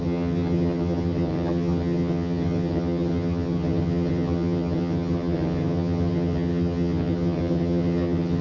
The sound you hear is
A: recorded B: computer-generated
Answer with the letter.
B